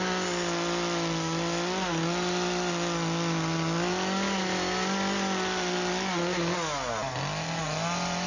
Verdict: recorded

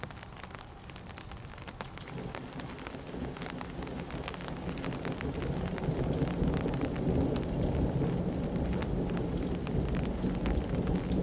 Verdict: recorded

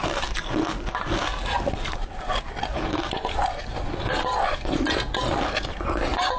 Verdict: recorded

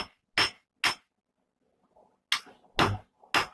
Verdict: recorded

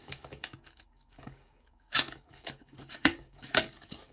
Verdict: remade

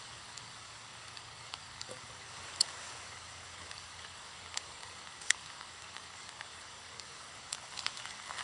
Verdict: remade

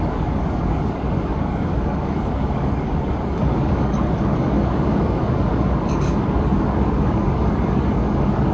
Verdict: remade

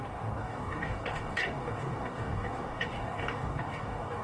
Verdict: remade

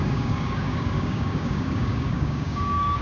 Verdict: remade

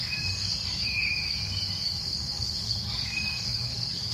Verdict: remade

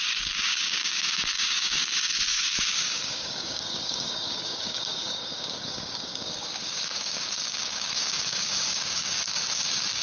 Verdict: remade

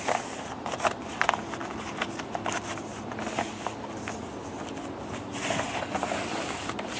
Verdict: recorded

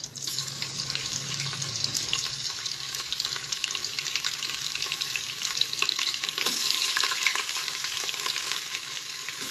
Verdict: remade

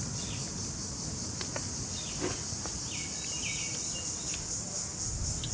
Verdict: recorded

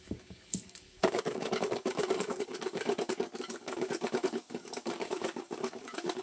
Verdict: remade